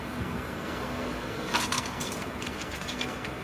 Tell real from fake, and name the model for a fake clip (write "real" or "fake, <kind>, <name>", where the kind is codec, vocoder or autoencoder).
fake, codec, SNAC